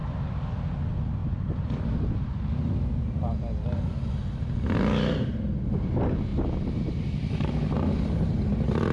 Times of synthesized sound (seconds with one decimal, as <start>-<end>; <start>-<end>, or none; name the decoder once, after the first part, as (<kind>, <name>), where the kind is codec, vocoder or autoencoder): 0.0-0.7 (vocoder, BigVGAN v2); 1.2-2.1